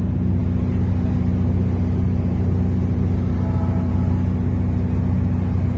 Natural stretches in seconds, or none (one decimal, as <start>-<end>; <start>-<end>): 0.0-5.8